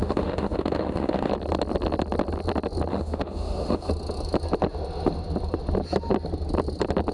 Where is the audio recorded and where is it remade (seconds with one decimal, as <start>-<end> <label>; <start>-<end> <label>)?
0.0-1.3 remade; 1.3-2.9 recorded; 2.9-3.9 remade; 3.9-7.1 recorded